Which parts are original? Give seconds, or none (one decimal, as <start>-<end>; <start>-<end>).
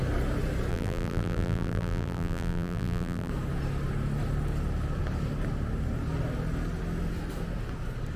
0.0-0.7; 3.3-8.2